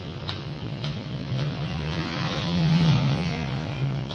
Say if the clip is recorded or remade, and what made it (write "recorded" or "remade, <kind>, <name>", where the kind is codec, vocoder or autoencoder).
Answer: remade, vocoder, Vocos